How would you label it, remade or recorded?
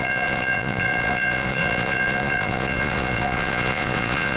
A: remade